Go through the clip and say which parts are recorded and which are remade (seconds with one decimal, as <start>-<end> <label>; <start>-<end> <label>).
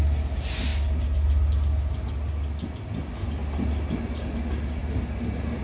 0.0-4.8 recorded; 4.8-5.6 remade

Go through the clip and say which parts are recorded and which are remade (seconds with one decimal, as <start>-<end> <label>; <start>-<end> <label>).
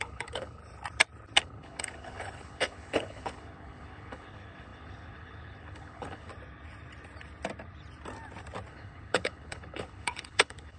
0.0-0.6 remade; 0.6-1.4 recorded; 1.4-6.3 remade; 6.3-8.7 recorded; 8.7-10.8 remade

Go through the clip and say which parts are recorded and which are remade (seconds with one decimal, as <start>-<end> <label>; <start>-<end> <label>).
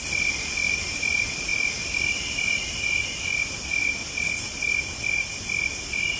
0.0-6.2 recorded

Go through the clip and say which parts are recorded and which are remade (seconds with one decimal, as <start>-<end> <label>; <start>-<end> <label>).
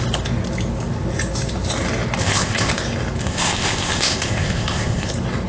0.0-2.2 recorded; 2.2-2.7 remade; 2.7-3.2 recorded; 3.2-5.1 remade; 5.1-5.5 recorded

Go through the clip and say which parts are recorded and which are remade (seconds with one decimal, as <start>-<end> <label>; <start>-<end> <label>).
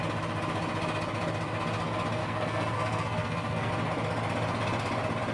0.0-2.2 recorded; 2.2-3.7 remade; 3.7-5.3 recorded